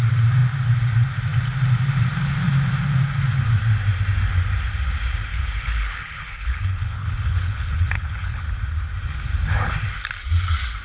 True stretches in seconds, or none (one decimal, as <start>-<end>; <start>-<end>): 0.0-5.3; 8.4-10.8